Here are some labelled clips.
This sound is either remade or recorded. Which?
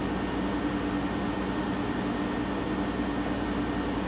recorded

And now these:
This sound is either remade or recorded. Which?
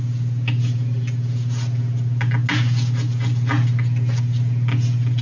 recorded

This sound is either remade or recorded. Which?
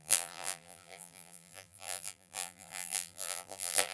remade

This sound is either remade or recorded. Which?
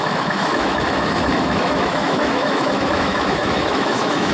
remade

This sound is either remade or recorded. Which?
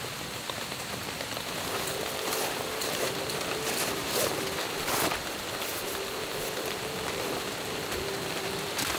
remade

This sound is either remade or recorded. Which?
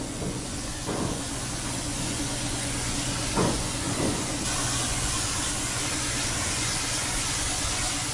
remade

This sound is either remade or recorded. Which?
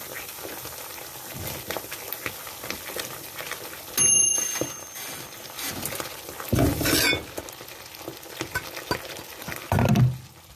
recorded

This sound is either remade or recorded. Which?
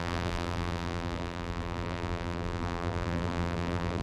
remade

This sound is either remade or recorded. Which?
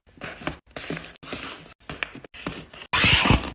recorded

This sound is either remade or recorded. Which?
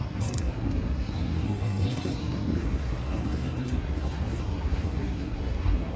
remade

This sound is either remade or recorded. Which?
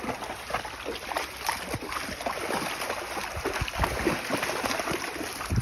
recorded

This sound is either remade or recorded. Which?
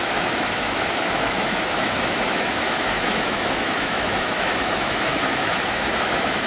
remade